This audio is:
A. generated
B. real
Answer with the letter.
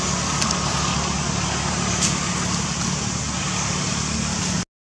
B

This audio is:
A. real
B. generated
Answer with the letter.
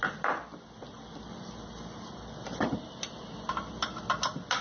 A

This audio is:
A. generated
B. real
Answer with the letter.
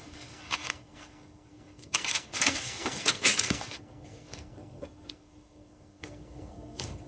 A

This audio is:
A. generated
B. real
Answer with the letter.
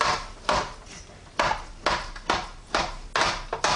B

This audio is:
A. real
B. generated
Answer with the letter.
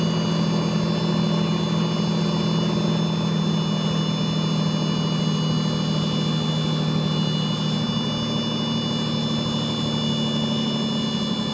A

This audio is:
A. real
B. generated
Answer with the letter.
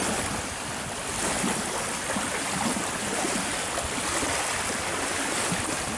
A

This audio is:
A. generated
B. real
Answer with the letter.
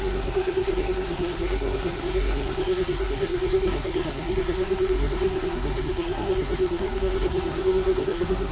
A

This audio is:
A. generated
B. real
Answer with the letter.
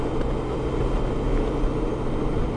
B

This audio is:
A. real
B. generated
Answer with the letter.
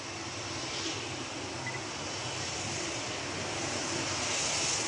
A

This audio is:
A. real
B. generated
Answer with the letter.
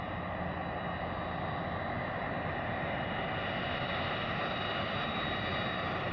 A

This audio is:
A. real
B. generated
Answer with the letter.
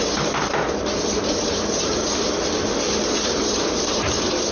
B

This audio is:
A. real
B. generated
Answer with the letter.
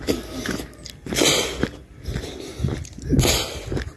A